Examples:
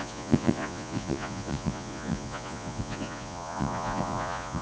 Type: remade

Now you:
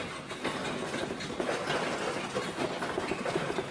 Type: recorded